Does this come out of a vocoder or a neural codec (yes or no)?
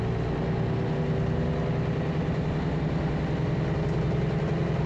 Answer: no